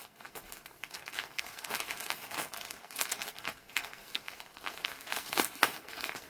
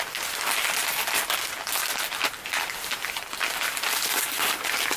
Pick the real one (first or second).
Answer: second